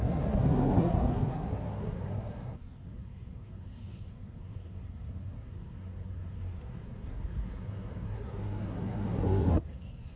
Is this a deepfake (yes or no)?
yes